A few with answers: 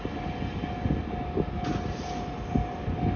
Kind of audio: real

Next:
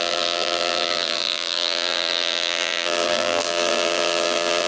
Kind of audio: fake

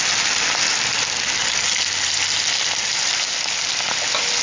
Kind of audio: real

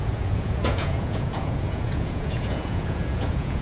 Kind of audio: fake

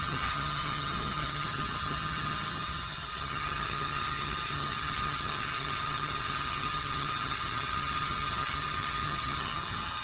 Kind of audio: fake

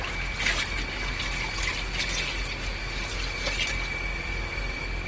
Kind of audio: real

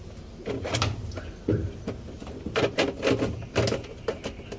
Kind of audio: real